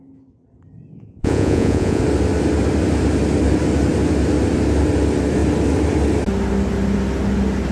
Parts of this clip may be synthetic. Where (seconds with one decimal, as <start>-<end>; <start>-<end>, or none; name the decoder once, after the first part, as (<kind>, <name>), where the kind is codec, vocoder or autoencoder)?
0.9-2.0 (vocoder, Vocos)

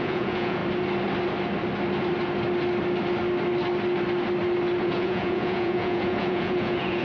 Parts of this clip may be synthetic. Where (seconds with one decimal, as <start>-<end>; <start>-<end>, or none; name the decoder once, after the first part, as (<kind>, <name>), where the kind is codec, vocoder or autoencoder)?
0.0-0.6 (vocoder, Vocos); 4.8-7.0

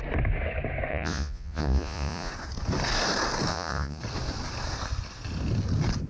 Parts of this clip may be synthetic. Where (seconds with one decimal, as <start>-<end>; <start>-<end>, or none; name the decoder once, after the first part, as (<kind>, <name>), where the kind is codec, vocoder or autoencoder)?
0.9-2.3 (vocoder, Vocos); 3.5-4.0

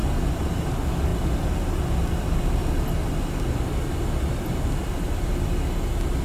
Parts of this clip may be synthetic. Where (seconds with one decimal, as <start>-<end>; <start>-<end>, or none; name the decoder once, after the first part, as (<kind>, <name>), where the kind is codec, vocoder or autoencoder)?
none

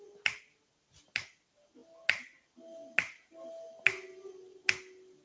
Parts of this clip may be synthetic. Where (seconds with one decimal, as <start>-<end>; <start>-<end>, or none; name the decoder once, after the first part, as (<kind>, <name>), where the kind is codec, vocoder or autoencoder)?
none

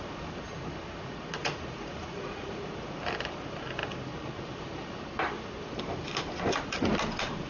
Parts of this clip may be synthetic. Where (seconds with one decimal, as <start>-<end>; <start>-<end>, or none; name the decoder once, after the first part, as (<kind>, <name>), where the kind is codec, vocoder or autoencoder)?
1.4-2.7 (vocoder, Vocos)